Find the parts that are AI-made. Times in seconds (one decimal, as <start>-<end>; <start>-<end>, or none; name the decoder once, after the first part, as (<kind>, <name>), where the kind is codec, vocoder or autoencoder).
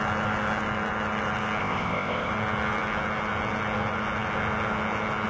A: 1.6-2.3 (codec, ZipCodec)